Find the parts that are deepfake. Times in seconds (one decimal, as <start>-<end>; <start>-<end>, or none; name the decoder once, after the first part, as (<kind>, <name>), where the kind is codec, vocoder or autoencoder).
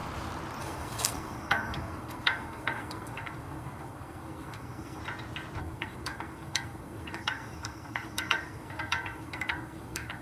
0.6-5.0 (codec, SNAC); 5.6-10.2